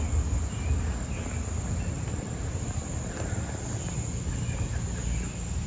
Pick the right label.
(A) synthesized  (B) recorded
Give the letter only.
B